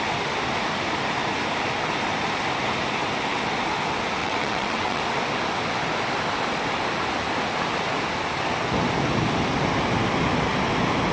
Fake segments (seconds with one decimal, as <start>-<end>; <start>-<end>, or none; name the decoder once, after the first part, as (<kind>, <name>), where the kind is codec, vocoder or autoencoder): 4.2-5.0 (vocoder, WaveNeXt)